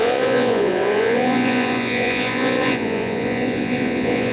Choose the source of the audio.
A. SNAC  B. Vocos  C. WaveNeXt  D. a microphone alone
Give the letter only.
B